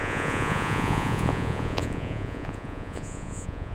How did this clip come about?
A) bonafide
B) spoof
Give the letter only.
B